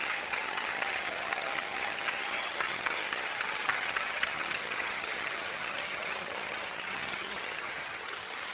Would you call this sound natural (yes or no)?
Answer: no